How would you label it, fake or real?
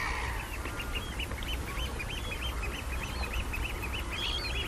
real